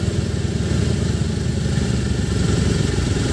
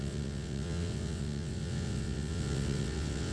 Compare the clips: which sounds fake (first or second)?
second